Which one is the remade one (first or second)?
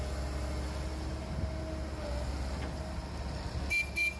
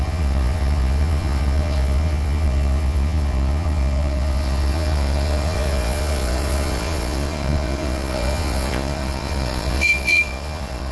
second